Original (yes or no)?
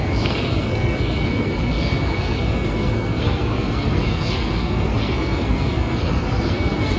no